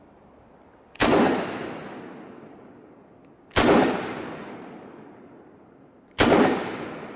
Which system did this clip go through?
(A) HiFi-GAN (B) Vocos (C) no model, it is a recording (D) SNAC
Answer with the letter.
C